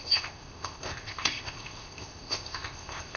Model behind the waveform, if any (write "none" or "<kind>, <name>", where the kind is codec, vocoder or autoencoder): codec, ZipCodec